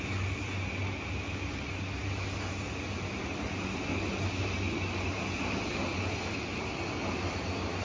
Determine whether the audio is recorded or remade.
recorded